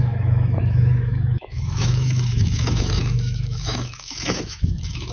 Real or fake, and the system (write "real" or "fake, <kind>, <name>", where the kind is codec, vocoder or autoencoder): fake, autoencoder, DAC-VAE